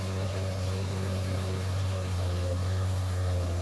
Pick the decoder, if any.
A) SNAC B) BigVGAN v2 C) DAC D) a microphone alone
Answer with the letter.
A